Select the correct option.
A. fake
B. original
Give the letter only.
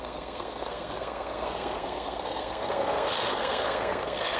A